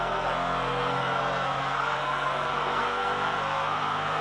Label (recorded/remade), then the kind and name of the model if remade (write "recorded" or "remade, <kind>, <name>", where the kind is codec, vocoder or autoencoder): remade, codec, SNAC